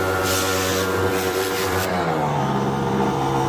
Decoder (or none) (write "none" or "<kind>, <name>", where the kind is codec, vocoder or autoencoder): vocoder, BigVGAN v2